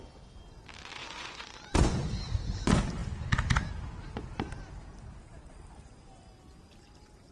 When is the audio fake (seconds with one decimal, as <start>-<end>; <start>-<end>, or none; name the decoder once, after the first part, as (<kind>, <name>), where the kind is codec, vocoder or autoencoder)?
1.0-2.1 (vocoder, Vocos)